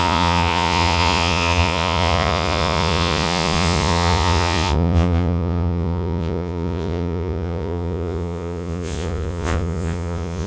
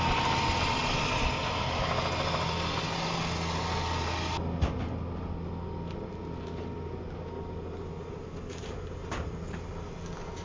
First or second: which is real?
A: second